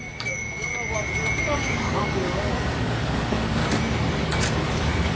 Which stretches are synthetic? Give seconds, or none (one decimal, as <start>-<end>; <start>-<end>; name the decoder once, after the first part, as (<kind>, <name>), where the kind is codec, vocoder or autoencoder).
0.0-0.7 (codec, DAC); 1.4-3.6; 4.2-5.2